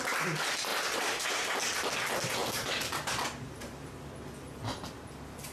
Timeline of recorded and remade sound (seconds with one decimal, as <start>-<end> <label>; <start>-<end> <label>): 0.0-0.7 recorded; 0.7-1.5 remade; 1.5-2.4 recorded; 2.4-4.0 remade; 4.0-5.5 recorded